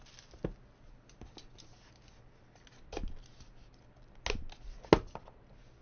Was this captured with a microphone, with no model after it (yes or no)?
yes